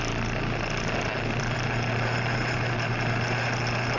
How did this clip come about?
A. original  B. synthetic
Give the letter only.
A